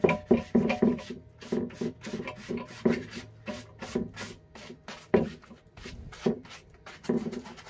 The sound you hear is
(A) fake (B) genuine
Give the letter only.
B